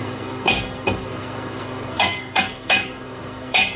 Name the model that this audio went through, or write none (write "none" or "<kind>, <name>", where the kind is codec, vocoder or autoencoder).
codec, SNAC